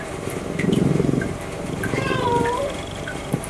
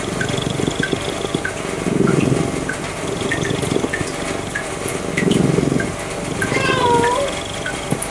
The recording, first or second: second